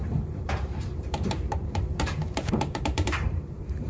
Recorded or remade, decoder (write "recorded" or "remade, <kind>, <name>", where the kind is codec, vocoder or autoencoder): remade, vocoder, BigVGAN v2